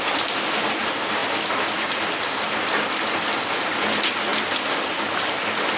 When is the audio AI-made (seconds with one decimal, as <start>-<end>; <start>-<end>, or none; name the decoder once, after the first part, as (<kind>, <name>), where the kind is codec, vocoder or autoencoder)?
none